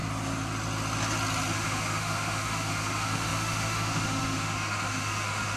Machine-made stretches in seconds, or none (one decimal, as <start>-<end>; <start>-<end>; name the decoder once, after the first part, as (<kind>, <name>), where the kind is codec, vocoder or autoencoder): 1.5-5.6 (autoencoder, DAC-VAE)